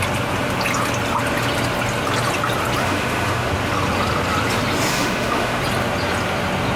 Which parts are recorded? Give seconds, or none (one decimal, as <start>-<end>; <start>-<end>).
0.0-2.8; 3.5-4.9; 5.6-6.8